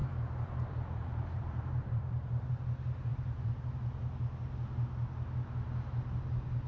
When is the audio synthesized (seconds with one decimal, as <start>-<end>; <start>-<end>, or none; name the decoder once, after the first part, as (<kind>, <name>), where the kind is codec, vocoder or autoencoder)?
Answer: 0.0-2.5 (vocoder, BigVGAN v2); 3.1-3.7